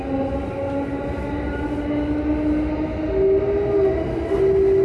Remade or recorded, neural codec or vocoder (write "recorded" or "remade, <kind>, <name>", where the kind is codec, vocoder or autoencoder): recorded